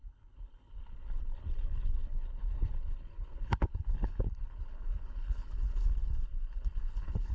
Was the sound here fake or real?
fake